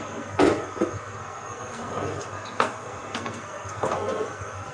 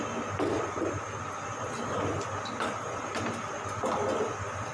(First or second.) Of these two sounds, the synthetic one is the first